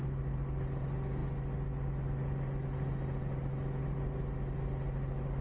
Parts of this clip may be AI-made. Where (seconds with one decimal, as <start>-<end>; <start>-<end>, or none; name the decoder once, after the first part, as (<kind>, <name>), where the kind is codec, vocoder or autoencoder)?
none